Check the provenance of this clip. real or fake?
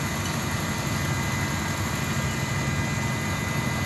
real